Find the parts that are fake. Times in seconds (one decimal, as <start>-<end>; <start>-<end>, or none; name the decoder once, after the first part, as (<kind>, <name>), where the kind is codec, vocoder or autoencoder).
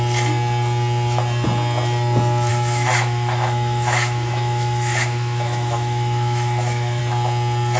2.5-7.0 (autoencoder, DAC-VAE)